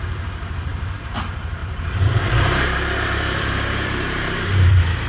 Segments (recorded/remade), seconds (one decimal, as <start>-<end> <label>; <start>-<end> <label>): 0.0-5.1 remade